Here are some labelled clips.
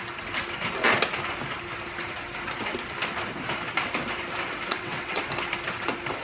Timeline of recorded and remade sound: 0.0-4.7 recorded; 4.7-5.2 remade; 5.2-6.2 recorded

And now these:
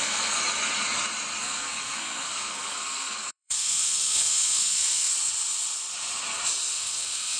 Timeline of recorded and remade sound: 0.0-0.4 remade; 0.4-1.4 recorded; 1.4-5.1 remade; 5.1-6.7 recorded; 6.7-7.4 remade

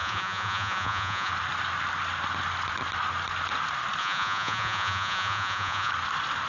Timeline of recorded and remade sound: 0.0-1.3 remade; 1.3-4.0 recorded; 4.0-5.9 remade; 5.9-6.5 recorded